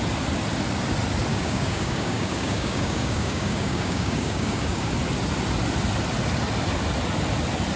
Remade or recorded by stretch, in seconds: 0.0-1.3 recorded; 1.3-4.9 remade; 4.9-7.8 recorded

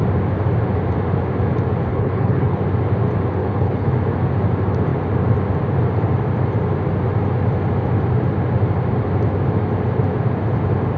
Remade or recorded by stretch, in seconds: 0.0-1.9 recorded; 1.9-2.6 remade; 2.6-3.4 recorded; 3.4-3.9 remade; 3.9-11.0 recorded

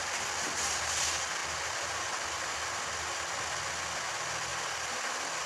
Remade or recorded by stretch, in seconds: 0.0-5.5 recorded

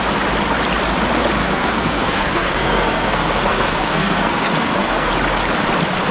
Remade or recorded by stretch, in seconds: 0.0-1.4 recorded; 1.4-5.1 remade; 5.1-6.1 recorded

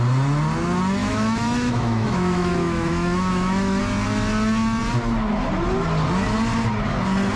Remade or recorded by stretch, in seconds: 0.0-1.0 recorded; 1.0-3.8 remade; 3.8-7.4 recorded